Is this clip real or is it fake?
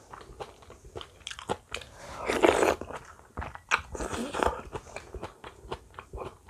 real